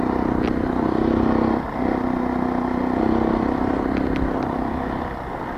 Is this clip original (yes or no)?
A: yes